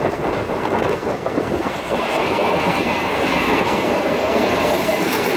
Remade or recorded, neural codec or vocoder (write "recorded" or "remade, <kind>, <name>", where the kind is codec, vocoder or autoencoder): remade, codec, SNAC